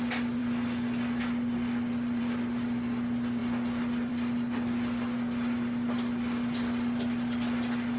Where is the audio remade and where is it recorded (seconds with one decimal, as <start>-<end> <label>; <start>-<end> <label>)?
0.0-8.0 recorded